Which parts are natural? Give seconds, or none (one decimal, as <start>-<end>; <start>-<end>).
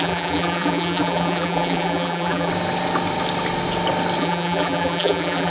2.5-4.2